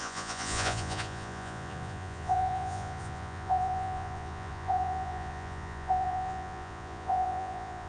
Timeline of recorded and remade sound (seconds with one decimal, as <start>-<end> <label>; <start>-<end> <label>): 0.0-7.9 remade